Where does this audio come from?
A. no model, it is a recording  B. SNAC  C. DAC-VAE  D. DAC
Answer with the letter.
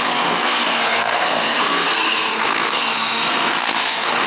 B